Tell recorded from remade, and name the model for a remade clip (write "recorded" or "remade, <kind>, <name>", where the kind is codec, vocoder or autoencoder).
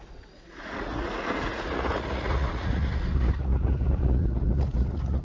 remade, vocoder, Vocos